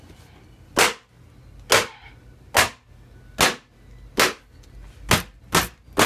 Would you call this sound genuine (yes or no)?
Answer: yes